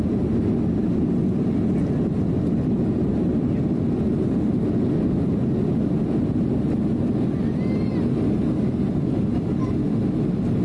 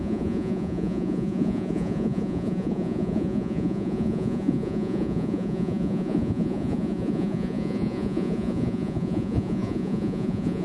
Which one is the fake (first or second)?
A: second